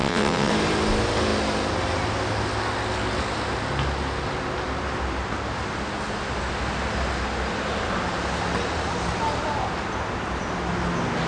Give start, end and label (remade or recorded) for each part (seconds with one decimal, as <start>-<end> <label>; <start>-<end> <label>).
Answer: 0.0-0.5 remade; 0.5-11.3 recorded